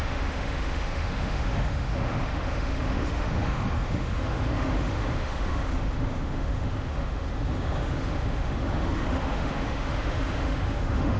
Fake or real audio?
fake